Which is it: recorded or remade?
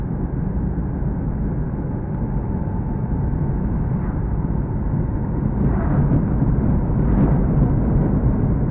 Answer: recorded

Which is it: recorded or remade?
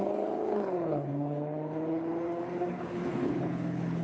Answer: remade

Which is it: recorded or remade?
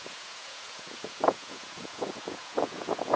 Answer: remade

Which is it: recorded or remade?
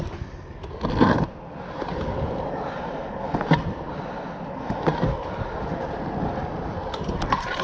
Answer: recorded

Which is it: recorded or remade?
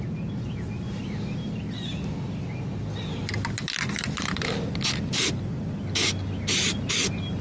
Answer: recorded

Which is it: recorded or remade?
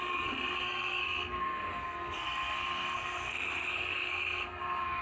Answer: remade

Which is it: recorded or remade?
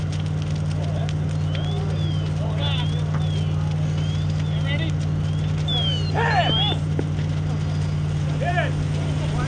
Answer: recorded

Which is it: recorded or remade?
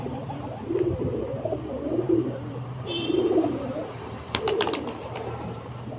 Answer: remade